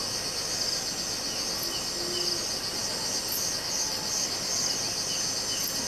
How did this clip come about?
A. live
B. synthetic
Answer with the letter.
A